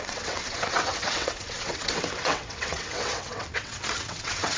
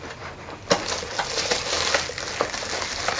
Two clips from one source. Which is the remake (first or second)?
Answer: first